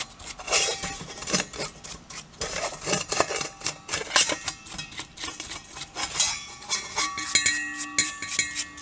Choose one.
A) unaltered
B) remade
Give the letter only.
A